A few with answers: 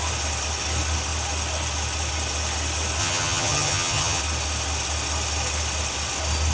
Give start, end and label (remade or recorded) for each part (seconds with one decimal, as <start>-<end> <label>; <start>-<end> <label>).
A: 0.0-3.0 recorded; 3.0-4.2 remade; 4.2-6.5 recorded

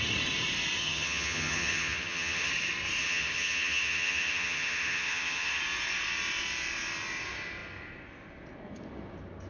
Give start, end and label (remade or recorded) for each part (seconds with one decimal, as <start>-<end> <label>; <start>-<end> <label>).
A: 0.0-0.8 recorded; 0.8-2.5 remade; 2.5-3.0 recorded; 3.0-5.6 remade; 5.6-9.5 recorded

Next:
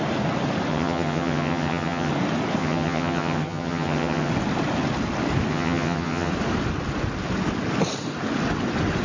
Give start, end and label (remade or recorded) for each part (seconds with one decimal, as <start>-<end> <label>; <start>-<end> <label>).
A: 0.0-0.7 recorded; 0.7-2.1 remade; 2.1-2.6 recorded; 2.6-4.3 remade; 4.3-5.5 recorded; 5.5-6.3 remade; 6.3-9.0 recorded

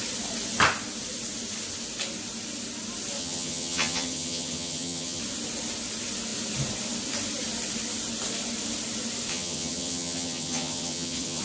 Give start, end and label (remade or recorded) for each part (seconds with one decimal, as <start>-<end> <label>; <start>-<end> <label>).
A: 0.0-3.2 recorded; 3.2-5.2 remade; 5.2-9.3 recorded; 9.3-11.4 remade

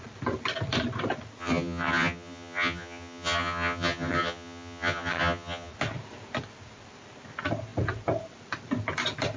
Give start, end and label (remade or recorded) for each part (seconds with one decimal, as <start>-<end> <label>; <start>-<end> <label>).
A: 0.0-1.4 recorded; 1.4-5.7 remade; 5.7-9.4 recorded

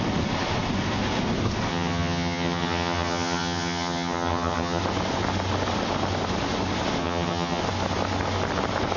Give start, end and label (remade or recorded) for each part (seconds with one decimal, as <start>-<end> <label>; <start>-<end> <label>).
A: 0.0-1.7 recorded; 1.7-4.8 remade; 4.8-7.0 recorded; 7.0-7.6 remade; 7.6-9.0 recorded

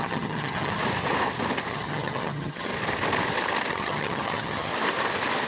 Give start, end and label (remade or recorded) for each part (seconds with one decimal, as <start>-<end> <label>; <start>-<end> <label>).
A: 0.0-0.8 remade; 0.8-1.7 recorded; 1.7-2.7 remade; 2.7-3.7 recorded; 3.7-4.7 remade; 4.7-5.5 recorded

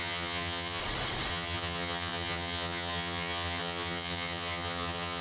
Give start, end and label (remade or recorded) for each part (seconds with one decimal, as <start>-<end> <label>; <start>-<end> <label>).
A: 0.0-0.8 remade; 0.8-1.3 recorded; 1.3-5.2 remade